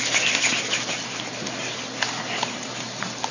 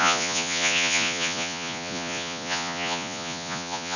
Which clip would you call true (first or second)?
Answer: first